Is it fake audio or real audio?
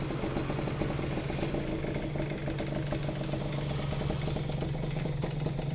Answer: real